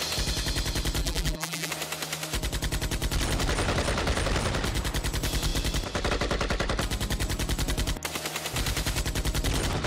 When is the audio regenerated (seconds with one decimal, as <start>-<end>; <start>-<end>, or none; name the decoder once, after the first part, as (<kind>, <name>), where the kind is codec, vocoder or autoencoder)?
1.0-1.7 (vocoder, BigVGAN v2)